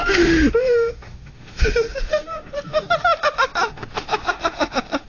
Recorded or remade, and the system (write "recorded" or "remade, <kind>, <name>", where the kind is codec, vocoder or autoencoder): remade, autoencoder, DAC-VAE